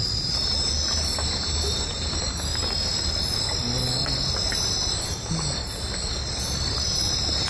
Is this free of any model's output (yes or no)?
yes